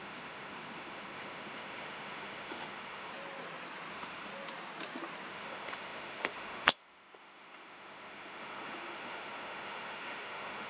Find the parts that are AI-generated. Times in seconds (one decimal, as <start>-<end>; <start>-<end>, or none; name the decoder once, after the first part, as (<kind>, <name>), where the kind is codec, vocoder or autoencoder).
0.0-3.1 (autoencoder, DAC-VAE); 3.9-4.3; 5.3-10.7